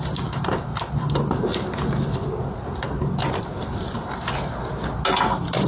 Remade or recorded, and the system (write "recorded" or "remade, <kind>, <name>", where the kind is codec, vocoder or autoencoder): recorded